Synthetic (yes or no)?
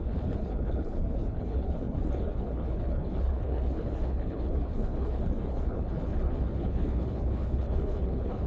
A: yes